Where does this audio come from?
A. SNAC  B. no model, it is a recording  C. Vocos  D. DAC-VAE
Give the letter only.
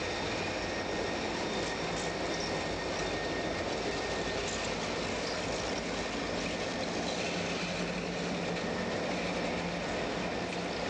B